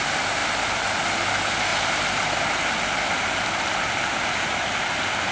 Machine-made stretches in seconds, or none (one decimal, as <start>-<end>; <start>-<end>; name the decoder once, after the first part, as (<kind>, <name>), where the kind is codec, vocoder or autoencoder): none